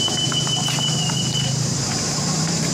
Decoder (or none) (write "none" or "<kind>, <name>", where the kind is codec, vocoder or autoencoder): vocoder, BigVGAN v2